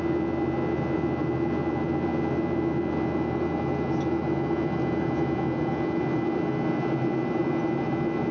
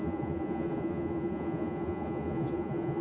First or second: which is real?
first